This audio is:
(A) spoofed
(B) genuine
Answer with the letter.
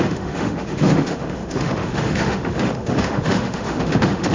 A